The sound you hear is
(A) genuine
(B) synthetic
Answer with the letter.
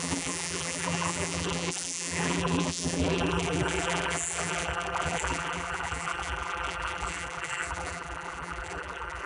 B